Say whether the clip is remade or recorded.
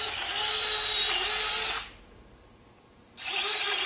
recorded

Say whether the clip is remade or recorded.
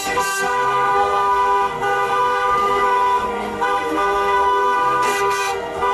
remade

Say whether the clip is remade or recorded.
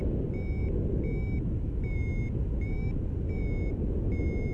recorded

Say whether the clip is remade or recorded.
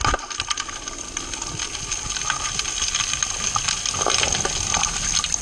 recorded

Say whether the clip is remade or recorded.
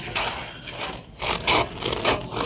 recorded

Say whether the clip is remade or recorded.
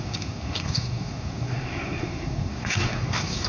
remade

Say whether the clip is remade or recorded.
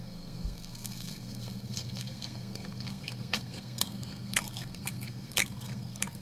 remade